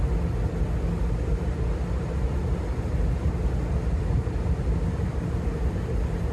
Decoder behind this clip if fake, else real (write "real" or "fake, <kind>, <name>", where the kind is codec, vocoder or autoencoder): real